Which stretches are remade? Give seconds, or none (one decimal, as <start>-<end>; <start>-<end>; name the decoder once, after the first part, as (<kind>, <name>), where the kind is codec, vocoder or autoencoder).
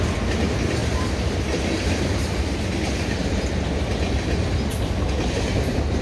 0.8-4.4 (vocoder, BigVGAN v2)